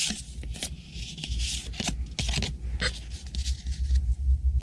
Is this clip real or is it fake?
real